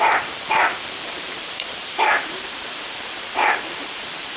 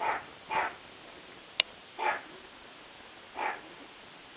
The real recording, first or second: second